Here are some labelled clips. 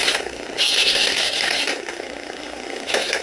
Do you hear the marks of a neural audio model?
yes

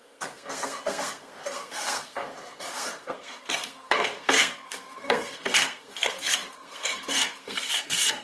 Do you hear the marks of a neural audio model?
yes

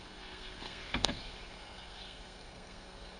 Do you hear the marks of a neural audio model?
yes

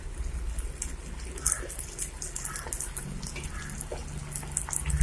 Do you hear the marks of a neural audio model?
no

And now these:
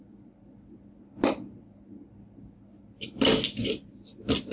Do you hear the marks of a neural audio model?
no